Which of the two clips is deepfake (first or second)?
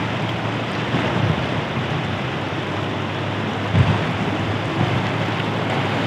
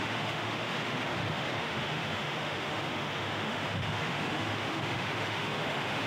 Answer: second